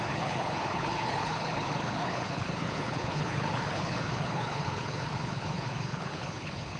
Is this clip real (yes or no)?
no